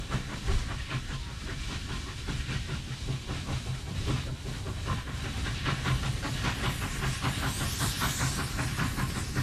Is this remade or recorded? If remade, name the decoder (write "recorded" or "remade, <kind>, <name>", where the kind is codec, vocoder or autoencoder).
recorded